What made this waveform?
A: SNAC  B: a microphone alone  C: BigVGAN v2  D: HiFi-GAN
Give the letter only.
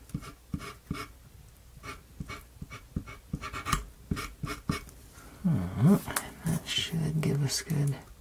B